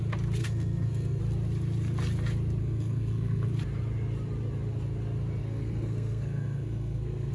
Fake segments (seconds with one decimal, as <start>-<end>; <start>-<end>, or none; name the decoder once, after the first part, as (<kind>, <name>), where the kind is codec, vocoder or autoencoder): 0.4-1.2 (codec, SNAC); 2.6-3.5; 5.4-7.3